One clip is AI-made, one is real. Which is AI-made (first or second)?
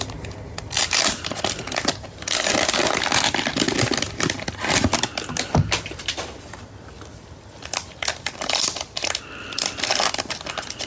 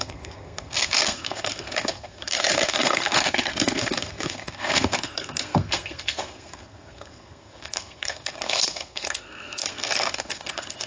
second